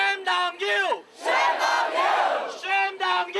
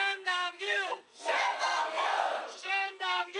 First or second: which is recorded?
first